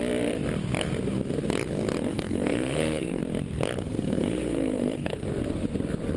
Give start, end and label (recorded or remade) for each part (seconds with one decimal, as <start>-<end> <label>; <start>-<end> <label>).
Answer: 0.0-2.1 recorded; 2.1-3.2 remade; 3.2-3.8 recorded; 3.8-5.3 remade; 5.3-6.2 recorded